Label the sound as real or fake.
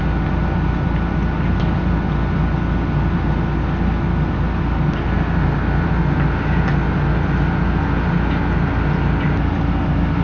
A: real